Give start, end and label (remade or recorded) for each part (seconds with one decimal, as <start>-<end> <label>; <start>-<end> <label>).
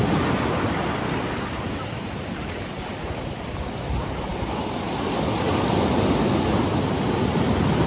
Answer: 0.0-7.9 recorded